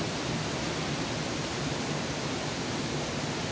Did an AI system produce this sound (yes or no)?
no